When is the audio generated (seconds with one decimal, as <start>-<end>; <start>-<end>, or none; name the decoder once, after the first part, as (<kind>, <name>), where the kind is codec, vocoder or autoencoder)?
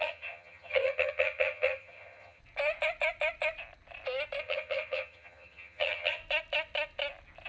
0.0-2.4 (vocoder, HiFi-GAN); 4.4-6.2